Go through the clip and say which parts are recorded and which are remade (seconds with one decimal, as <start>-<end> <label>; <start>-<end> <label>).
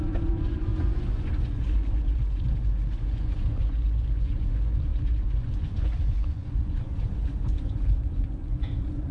0.0-9.1 remade